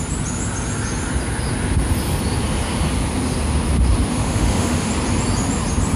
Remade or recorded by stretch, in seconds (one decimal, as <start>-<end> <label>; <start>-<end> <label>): 0.0-4.1 recorded; 4.1-4.9 remade; 4.9-6.0 recorded